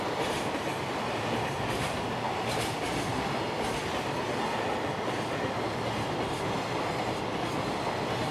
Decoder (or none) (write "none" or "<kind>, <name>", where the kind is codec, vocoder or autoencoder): none